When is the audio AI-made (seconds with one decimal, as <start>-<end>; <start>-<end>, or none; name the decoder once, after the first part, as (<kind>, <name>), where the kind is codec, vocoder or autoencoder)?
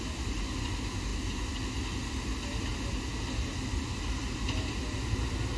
none